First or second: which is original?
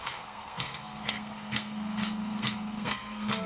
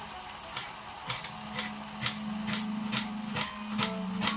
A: second